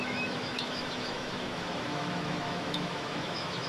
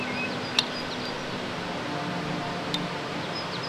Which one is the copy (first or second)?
first